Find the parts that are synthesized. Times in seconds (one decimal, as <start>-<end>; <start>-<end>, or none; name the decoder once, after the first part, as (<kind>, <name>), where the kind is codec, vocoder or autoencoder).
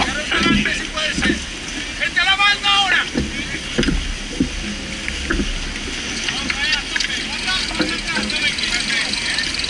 none